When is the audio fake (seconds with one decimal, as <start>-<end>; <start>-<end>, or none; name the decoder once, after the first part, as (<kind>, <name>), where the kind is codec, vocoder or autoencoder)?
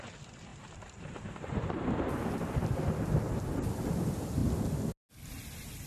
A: 0.5-2.8 (vocoder, BigVGAN v2)